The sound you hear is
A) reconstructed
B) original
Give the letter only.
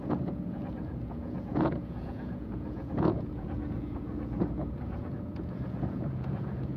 A